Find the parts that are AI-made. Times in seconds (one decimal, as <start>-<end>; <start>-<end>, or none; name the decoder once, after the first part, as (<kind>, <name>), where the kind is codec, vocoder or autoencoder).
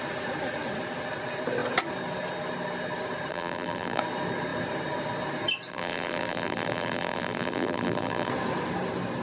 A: 3.3-4.0 (vocoder, BigVGAN v2); 5.7-8.3